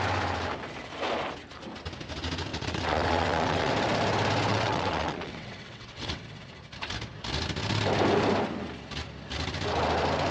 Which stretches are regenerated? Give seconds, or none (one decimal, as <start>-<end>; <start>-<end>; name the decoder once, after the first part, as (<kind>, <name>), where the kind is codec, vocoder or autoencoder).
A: 2.5-3.7 (vocoder, WaveNeXt); 4.5-6.2